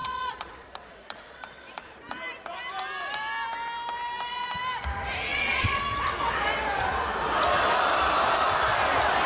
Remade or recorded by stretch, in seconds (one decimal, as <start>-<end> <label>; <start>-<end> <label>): 0.0-2.0 remade; 2.0-5.3 recorded; 5.3-5.8 remade; 5.8-9.3 recorded

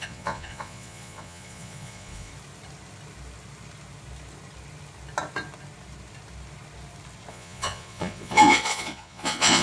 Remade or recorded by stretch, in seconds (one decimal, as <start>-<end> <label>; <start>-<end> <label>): 0.0-2.3 remade; 2.3-7.3 recorded; 7.3-9.6 remade

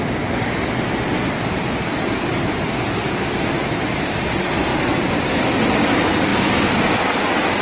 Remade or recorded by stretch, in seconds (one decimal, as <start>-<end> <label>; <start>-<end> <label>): 0.0-7.6 recorded